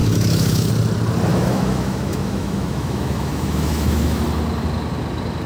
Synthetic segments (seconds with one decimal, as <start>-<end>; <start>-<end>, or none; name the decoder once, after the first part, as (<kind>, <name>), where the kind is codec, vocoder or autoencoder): 0.0-0.7 (autoencoder, DAC-VAE); 1.3-4.2

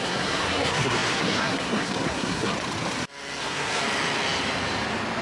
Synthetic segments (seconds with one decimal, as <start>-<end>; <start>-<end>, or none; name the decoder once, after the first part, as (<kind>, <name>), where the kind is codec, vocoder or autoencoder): 0.0-2.5 (codec, SNAC); 3.4-3.8

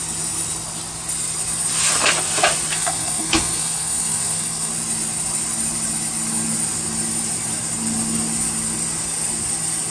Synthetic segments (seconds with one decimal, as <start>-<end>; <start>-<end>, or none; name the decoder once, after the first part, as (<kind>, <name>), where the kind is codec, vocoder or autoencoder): 2.7-4.7 (codec, SNAC)

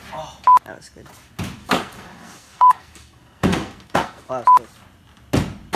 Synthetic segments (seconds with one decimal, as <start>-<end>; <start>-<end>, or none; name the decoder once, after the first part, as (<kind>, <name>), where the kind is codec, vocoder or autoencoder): 1.6-4.3 (codec, SNAC)

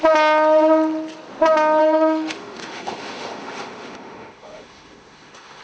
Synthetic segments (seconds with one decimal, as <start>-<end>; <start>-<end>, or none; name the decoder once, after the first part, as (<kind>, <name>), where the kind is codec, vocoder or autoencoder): 1.8-5.6 (autoencoder, DAC-VAE)